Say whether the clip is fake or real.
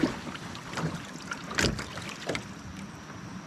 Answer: real